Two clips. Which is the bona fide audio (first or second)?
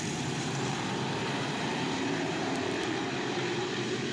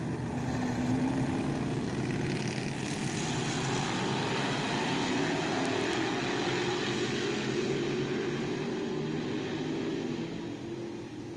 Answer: second